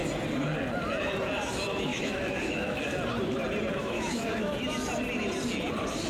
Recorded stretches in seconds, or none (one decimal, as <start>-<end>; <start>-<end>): 0.0-1.9; 2.8-3.8; 4.5-6.1